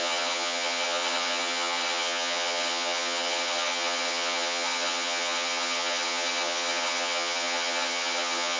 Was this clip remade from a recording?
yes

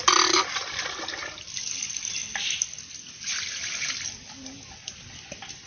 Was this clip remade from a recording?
no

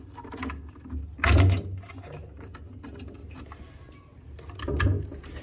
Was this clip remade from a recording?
no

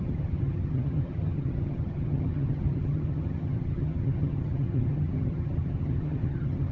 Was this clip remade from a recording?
yes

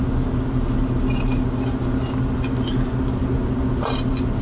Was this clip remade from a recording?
no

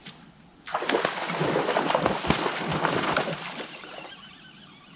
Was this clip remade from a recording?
no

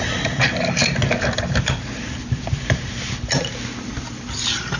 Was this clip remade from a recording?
no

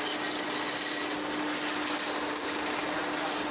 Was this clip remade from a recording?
no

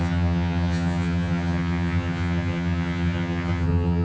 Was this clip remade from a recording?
yes